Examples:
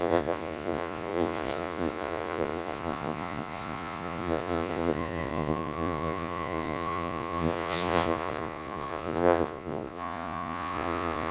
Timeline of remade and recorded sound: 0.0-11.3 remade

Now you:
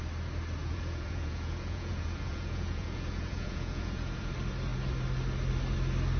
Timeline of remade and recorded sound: 0.0-0.6 recorded; 0.6-4.3 remade; 4.3-6.2 recorded

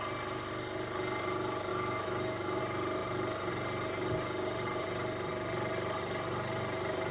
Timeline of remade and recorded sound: 0.0-1.7 recorded; 1.7-2.6 remade; 2.6-7.1 recorded